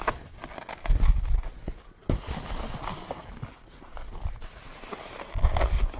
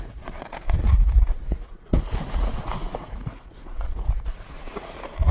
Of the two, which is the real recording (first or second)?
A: first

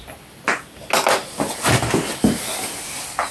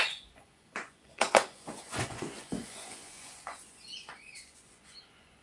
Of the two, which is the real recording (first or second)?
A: first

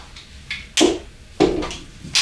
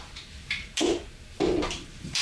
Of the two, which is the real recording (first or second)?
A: first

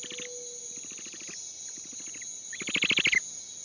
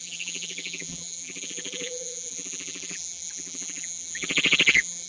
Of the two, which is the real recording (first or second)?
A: first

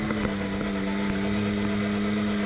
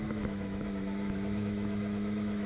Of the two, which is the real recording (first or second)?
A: first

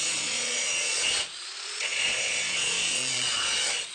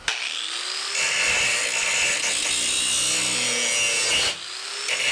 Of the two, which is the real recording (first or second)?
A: second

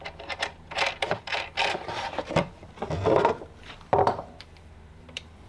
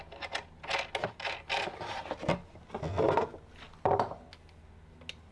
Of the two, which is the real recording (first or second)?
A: second